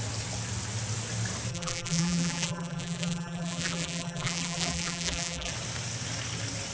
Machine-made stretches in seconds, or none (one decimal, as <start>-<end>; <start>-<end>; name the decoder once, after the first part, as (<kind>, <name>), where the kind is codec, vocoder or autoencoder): 1.5-5.5 (vocoder, BigVGAN v2)